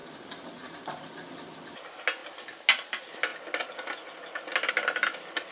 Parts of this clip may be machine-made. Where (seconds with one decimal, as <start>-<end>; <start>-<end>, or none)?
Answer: 0.0-1.1